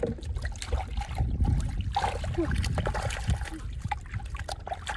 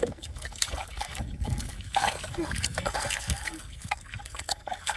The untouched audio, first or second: first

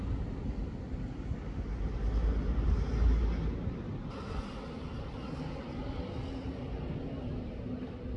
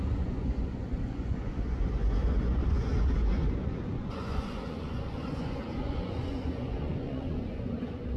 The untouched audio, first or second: first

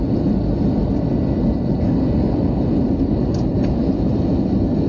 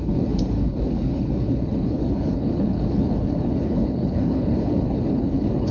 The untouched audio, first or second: first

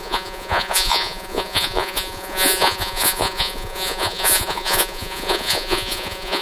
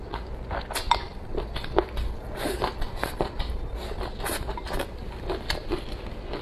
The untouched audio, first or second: second